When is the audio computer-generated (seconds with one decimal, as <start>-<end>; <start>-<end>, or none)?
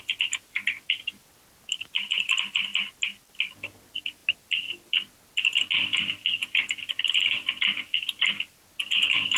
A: none